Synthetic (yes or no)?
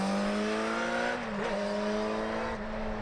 no